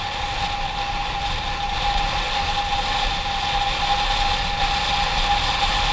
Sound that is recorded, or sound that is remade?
recorded